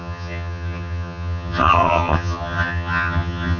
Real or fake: fake